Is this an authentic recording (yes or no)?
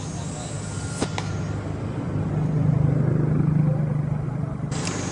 yes